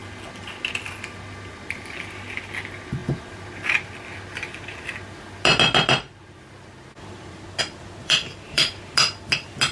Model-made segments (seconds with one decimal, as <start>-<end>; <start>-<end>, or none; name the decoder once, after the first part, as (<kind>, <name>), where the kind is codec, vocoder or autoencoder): 8.0-8.8 (vocoder, BigVGAN v2)